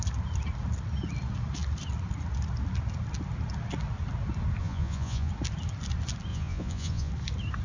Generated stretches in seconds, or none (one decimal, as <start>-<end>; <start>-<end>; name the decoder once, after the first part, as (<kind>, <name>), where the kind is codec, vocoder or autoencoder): 4.6-5.3 (vocoder, Vocos); 6.3-7.1